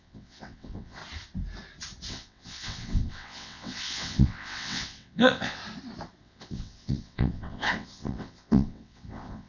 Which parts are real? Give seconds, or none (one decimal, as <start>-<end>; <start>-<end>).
1.0-2.1; 5.6-6.2